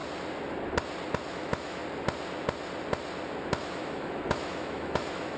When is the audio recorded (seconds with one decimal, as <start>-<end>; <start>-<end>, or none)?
0.0-1.3; 1.8-3.6